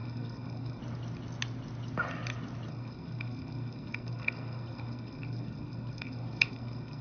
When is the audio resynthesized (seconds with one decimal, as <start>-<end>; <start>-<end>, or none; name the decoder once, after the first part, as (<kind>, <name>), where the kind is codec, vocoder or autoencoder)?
0.0-0.8 (codec, SNAC); 2.7-7.0